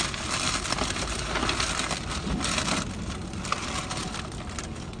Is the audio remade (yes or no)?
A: no